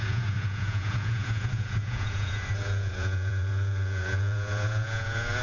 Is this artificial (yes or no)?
yes